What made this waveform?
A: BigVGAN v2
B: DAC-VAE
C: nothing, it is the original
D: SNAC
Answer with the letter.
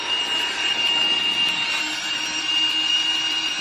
C